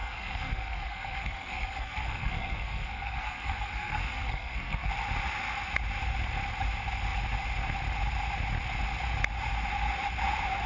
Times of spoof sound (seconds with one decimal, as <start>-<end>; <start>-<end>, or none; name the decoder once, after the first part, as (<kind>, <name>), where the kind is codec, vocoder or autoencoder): 0.0-4.9 (codec, SNAC)